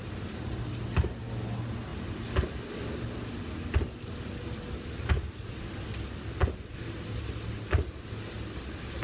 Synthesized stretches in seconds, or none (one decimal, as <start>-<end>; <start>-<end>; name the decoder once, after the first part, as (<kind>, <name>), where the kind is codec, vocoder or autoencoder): none